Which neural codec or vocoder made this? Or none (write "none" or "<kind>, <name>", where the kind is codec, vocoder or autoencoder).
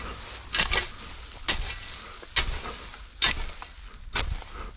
none